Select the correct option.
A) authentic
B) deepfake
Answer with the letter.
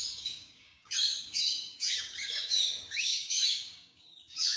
B